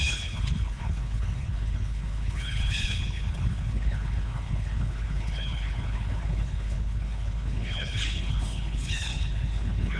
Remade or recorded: remade